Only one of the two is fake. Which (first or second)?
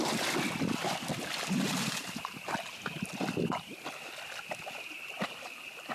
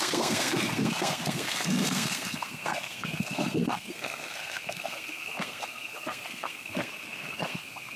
second